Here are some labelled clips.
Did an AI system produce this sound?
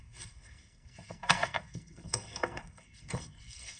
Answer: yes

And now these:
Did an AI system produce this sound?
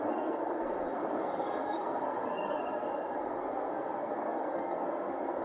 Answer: yes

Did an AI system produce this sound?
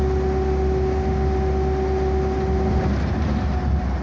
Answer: no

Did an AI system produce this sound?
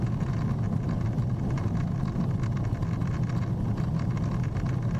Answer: no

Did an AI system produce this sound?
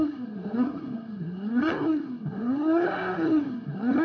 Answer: yes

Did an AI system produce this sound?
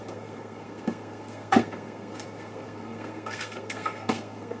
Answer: yes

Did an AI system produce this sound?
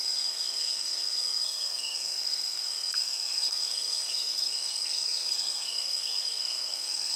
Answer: yes